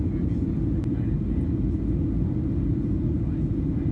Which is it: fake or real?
real